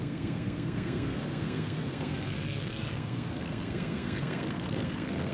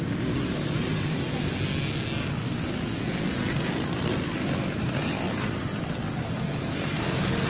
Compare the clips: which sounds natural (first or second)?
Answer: second